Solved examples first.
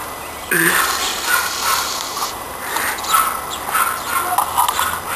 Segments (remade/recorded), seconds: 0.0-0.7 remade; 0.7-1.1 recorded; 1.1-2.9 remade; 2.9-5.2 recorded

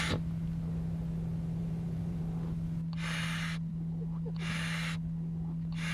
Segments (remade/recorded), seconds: 0.0-1.6 recorded; 1.6-2.2 remade; 2.2-5.9 recorded

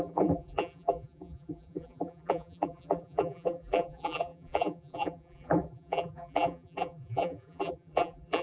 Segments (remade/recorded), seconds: 0.0-8.4 remade

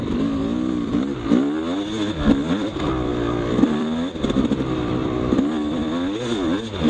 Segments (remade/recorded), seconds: 0.0-3.1 recorded; 3.1-5.4 remade; 5.4-6.9 recorded

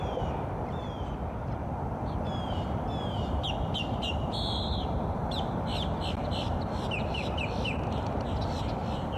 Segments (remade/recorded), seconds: 0.0-9.2 remade

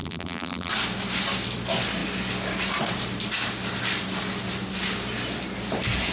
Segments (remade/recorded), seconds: 0.0-0.7 remade; 0.7-6.1 recorded

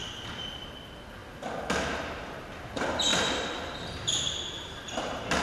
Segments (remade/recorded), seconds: 0.0-0.6 remade; 0.6-3.1 recorded; 3.1-4.0 remade; 4.0-5.4 recorded

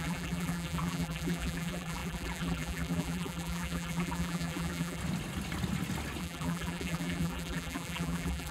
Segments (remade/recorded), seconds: 0.0-5.0 remade; 5.0-6.2 recorded; 6.2-8.5 remade